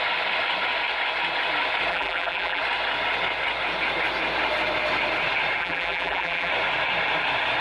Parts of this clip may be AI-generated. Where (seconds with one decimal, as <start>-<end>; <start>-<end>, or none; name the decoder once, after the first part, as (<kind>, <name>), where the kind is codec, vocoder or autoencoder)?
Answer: 1.9-2.6 (vocoder, BigVGAN v2); 5.6-6.5